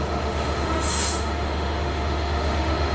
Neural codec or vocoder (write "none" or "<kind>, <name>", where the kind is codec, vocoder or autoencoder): autoencoder, DAC-VAE